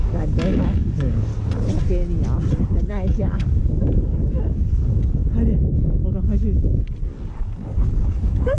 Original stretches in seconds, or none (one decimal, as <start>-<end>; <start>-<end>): 1.3-2.8; 5.2-7.3